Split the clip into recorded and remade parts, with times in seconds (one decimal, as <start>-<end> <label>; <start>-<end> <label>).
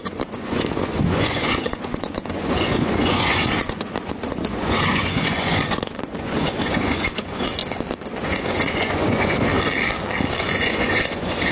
0.0-7.6 remade; 7.6-8.2 recorded; 8.2-9.5 remade; 9.5-10.4 recorded; 10.4-11.5 remade